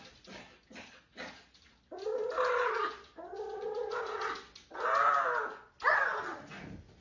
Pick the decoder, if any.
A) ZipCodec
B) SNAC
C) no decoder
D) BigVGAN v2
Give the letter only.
C